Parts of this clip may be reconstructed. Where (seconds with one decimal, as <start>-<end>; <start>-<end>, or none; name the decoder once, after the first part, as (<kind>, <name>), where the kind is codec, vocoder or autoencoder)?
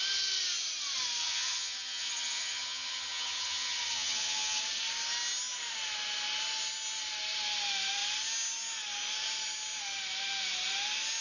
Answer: 1.2-4.6 (vocoder, HiFi-GAN)